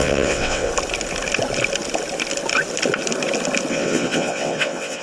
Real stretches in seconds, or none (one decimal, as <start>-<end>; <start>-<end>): 0.7-3.7